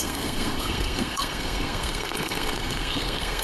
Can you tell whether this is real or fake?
fake